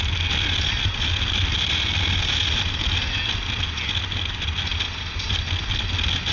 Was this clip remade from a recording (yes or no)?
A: no